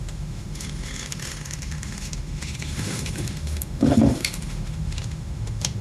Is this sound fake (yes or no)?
yes